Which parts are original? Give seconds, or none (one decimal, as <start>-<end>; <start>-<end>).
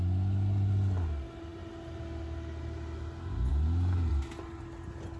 0.0-5.2